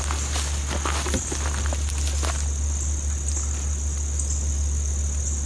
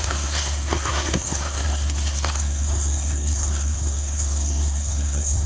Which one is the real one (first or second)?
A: first